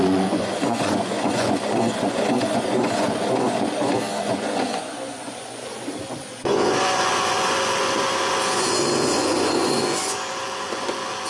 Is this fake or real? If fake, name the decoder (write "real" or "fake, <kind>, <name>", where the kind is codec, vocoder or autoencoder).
fake, vocoder, Vocos